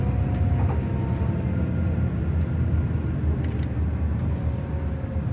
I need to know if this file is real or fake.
real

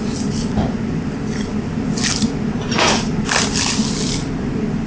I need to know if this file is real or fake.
real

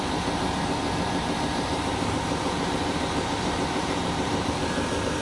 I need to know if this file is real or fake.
fake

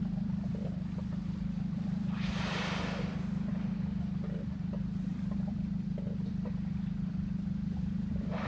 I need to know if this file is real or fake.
fake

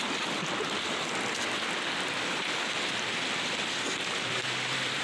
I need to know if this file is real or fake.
real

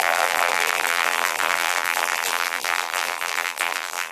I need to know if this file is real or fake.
fake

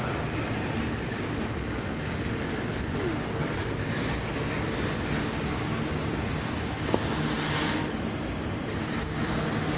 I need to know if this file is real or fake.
real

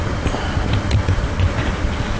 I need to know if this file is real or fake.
fake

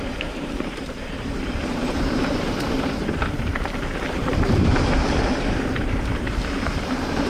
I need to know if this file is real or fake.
fake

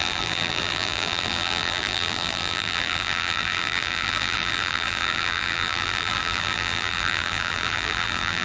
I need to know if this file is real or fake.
fake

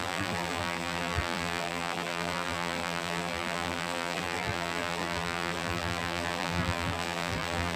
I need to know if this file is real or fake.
fake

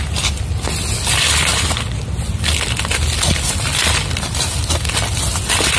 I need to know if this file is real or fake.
real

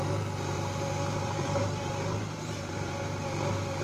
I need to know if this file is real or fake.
fake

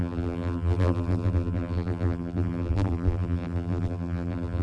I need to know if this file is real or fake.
fake